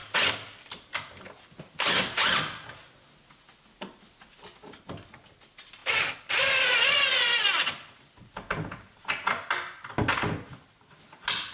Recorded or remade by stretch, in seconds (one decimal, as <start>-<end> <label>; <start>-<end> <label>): 0.0-11.5 recorded